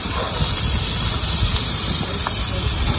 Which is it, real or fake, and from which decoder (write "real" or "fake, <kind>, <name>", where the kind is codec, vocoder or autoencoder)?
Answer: real